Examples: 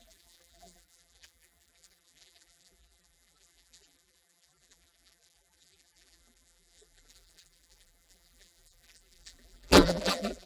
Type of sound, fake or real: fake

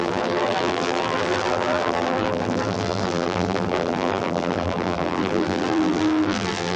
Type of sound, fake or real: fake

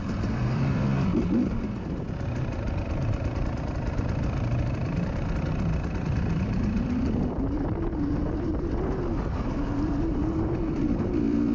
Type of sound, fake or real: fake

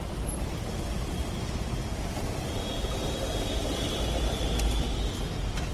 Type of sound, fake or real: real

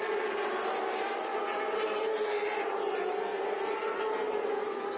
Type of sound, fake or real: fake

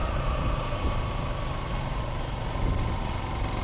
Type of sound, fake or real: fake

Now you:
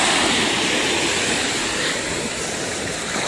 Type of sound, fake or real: real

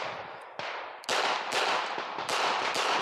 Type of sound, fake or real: real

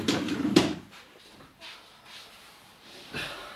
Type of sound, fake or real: fake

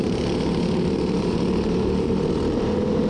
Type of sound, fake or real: fake